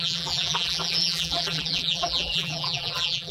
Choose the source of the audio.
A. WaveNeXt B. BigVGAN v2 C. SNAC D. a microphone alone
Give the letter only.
B